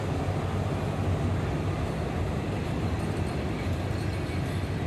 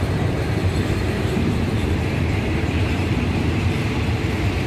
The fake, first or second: second